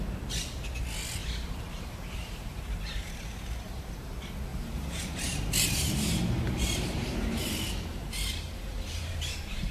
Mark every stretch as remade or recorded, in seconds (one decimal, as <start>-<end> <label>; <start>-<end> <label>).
0.0-1.2 recorded; 1.2-3.8 remade; 3.8-4.5 recorded; 4.5-7.5 remade; 7.5-7.9 recorded; 7.9-9.7 remade